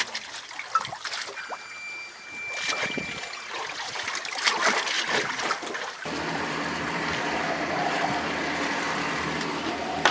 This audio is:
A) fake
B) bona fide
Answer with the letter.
B